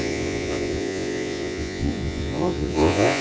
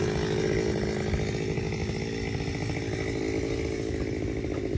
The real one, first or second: second